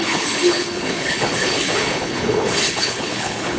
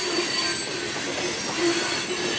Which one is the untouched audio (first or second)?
second